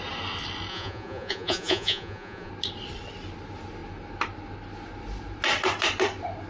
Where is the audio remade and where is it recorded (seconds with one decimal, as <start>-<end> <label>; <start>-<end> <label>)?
0.0-0.7 recorded; 0.7-2.5 remade; 2.5-6.5 recorded